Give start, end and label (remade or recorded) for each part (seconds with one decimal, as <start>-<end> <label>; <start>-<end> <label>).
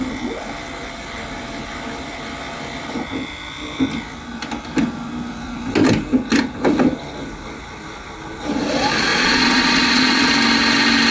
0.0-9.1 recorded; 9.1-10.3 remade; 10.3-11.1 recorded